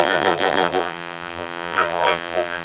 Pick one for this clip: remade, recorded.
remade